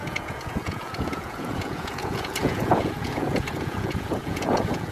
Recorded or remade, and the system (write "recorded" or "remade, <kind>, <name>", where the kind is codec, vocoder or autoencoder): remade, vocoder, Vocos